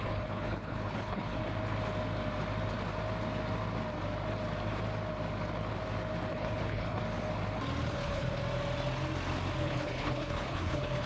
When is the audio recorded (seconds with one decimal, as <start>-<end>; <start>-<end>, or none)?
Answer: 1.4-6.3; 7.0-7.9; 8.4-9.6